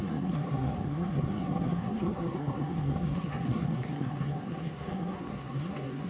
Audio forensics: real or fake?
fake